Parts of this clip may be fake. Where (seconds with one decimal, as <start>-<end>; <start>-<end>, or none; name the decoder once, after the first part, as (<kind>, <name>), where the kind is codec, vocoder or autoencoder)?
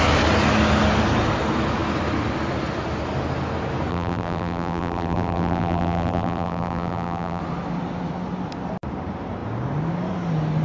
3.9-7.4 (vocoder, BigVGAN v2)